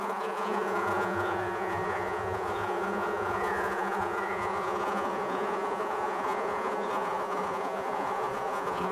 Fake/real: fake